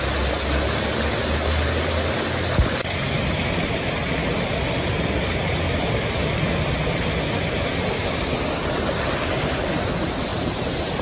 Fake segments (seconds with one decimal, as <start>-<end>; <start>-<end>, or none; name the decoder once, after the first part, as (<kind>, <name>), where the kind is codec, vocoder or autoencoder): 10.3-11.0 (vocoder, BigVGAN v2)